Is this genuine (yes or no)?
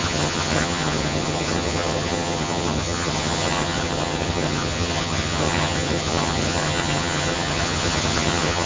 no